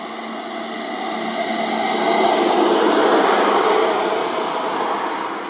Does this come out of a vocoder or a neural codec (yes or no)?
no